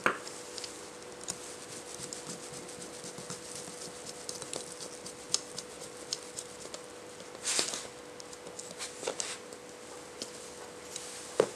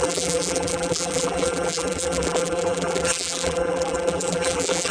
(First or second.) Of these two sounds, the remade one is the second